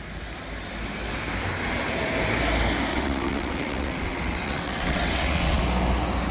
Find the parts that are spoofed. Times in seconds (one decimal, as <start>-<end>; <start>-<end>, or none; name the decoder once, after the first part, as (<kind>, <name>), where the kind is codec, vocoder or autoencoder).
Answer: 2.9-5.6 (vocoder, WaveNeXt)